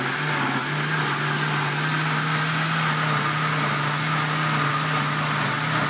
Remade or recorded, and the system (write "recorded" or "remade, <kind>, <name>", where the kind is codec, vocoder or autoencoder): recorded